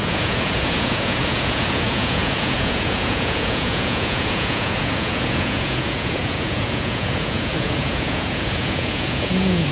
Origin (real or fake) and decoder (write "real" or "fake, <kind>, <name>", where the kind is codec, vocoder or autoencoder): fake, vocoder, Vocos